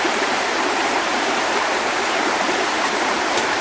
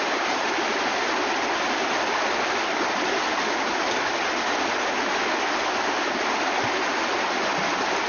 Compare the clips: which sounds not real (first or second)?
first